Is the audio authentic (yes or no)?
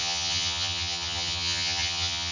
no